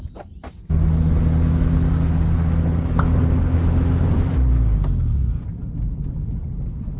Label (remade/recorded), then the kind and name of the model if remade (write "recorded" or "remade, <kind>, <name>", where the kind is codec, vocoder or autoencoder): recorded